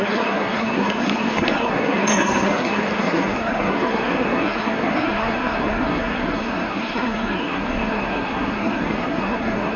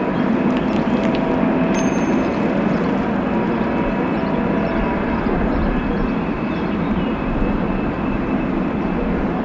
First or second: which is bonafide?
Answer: second